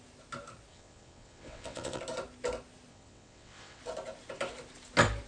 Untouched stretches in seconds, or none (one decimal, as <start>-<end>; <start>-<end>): 0.0-0.7; 2.0-2.9; 3.8-5.3